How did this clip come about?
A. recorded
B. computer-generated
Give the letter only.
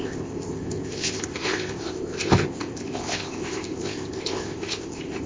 B